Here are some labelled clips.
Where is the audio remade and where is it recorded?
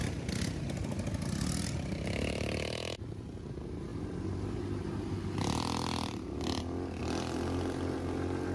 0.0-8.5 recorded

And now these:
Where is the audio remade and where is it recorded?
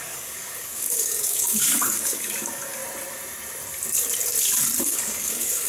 0.0-2.8 remade; 2.8-4.8 recorded; 4.8-5.7 remade